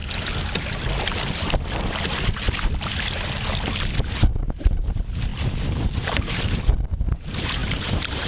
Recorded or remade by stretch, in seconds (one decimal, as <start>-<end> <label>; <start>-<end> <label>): 0.0-3.9 recorded; 3.9-8.3 remade